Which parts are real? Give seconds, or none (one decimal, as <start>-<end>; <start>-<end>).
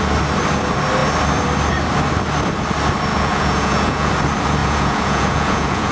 0.0-3.1; 4.1-4.6